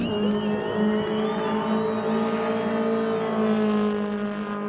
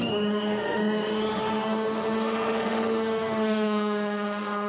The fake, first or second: second